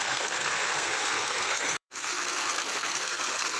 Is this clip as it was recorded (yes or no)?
no